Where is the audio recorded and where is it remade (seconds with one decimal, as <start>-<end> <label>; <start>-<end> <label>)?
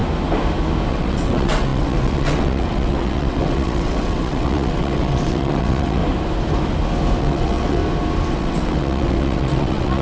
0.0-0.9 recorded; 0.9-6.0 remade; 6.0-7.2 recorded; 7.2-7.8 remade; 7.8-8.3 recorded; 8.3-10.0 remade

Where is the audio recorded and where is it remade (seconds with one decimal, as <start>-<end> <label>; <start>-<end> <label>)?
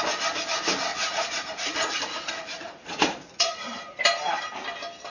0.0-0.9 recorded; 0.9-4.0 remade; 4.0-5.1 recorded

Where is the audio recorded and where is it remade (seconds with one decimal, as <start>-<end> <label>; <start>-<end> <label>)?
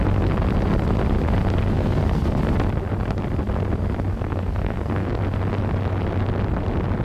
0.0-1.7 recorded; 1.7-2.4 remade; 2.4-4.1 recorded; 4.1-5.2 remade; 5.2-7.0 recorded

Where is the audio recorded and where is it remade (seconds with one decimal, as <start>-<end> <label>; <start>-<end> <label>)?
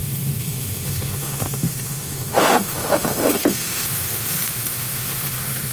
0.0-5.7 remade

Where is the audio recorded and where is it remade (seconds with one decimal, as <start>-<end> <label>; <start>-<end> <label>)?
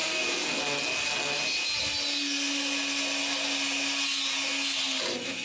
0.0-5.4 recorded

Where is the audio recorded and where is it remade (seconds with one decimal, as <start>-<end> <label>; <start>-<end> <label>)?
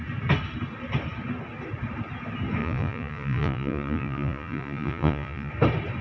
0.0-2.6 recorded; 2.6-5.5 remade; 5.5-6.0 recorded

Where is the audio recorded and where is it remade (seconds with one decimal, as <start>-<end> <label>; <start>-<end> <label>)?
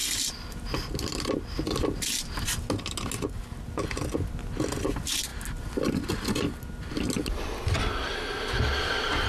0.0-9.3 recorded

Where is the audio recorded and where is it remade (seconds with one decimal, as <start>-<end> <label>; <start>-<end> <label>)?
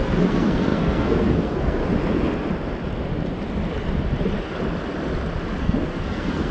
0.0-1.8 remade; 1.8-5.6 recorded; 5.6-6.5 remade